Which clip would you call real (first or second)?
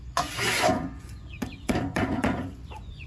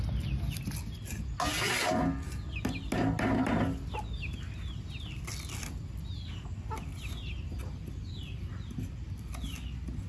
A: second